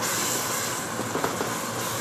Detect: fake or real real